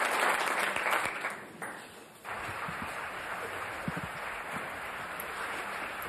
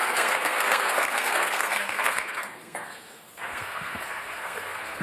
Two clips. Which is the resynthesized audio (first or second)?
second